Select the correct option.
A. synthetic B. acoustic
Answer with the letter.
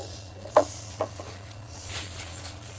A